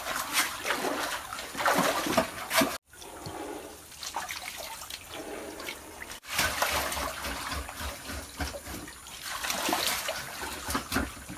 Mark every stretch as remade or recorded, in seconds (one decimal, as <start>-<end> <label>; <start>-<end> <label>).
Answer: 0.0-11.4 recorded